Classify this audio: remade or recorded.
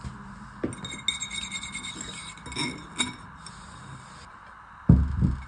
recorded